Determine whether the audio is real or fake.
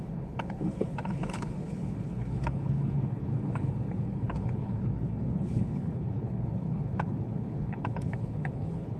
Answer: fake